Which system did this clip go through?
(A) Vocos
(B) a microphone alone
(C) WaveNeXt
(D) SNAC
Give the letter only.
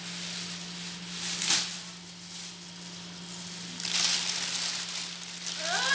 B